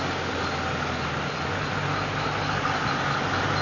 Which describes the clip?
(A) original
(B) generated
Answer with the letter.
A